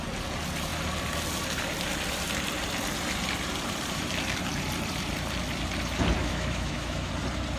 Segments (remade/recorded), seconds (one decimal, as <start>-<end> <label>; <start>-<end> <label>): 0.0-6.2 recorded; 6.2-7.1 remade; 7.1-7.6 recorded